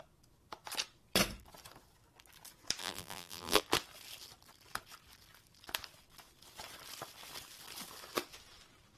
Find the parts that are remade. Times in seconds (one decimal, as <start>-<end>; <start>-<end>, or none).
2.8-3.6